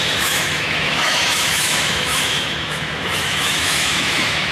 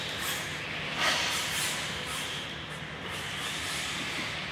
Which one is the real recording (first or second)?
second